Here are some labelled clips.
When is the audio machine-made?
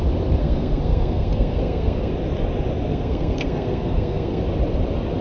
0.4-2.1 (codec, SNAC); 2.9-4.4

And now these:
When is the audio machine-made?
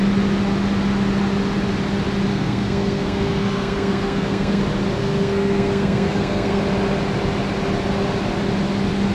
2.3-4.6 (codec, SNAC); 5.0-6.6